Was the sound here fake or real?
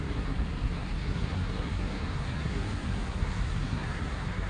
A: fake